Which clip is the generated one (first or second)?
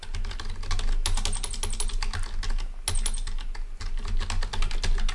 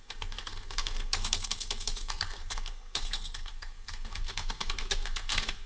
second